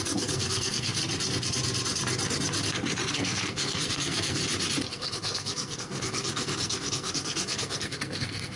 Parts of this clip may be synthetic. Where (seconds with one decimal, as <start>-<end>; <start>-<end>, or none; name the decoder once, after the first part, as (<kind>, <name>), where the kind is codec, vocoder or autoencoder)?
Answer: 0.0-1.0 (codec, SNAC); 3.1-4.4; 4.9-8.6